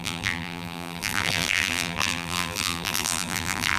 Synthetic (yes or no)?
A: yes